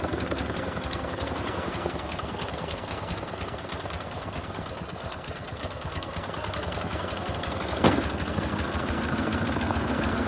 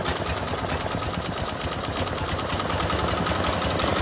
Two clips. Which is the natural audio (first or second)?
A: second